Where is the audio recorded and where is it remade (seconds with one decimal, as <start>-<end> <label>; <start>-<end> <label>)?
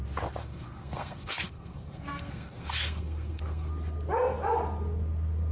0.0-0.4 recorded; 0.4-3.7 remade; 3.7-5.5 recorded